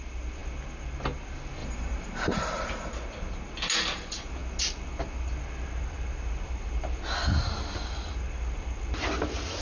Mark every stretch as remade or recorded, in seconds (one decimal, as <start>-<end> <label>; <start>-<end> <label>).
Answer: 0.0-1.6 recorded; 1.6-2.9 remade; 2.9-9.6 recorded